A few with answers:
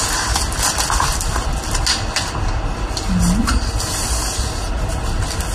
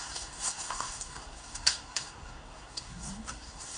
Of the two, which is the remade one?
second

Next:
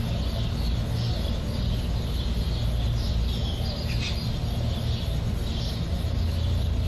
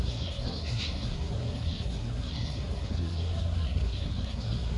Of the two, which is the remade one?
second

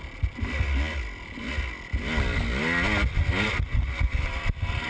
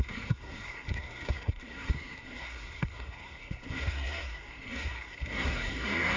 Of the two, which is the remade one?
second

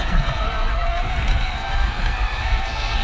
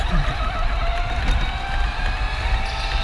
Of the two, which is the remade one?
first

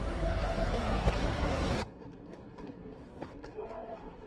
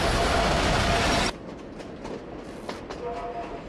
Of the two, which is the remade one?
first